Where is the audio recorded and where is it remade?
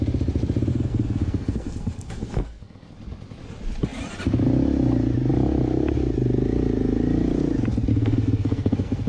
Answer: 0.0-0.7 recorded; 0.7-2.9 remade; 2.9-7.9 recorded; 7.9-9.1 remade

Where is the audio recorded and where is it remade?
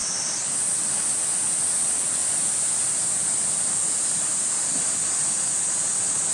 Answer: 0.0-6.3 recorded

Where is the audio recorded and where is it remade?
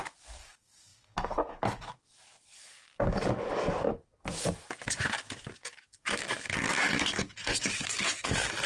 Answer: 0.0-8.7 remade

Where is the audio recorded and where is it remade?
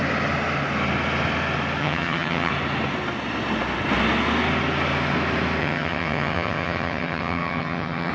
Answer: 0.0-1.8 recorded; 1.8-2.5 remade; 2.5-5.6 recorded; 5.6-8.1 remade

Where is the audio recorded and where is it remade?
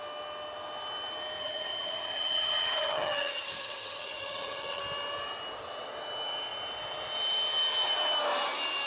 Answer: 0.0-1.4 recorded; 1.4-4.8 remade; 4.8-8.9 recorded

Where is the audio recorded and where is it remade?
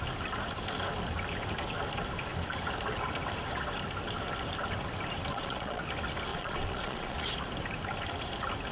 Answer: 0.0-5.3 recorded; 5.3-5.8 remade; 5.8-6.3 recorded; 6.3-7.3 remade; 7.3-8.7 recorded